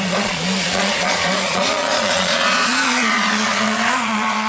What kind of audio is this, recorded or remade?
remade